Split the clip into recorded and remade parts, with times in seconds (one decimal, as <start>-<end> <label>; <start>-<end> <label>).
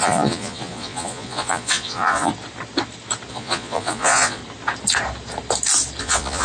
0.0-2.3 remade; 2.3-3.3 recorded; 3.3-4.4 remade; 4.4-6.0 recorded; 6.0-6.4 remade